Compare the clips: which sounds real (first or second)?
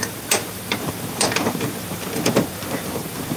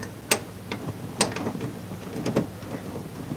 second